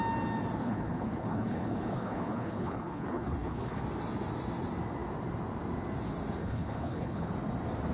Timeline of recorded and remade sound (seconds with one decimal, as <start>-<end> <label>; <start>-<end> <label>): 0.0-0.6 recorded; 0.6-3.8 remade; 3.8-6.4 recorded; 6.4-7.3 remade; 7.3-7.9 recorded